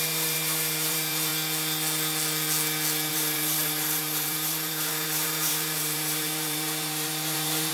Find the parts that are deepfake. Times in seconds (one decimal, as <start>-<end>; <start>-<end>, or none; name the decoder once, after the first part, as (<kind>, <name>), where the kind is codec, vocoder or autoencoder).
0.0-1.3 (vocoder, BigVGAN v2); 3.1-7.7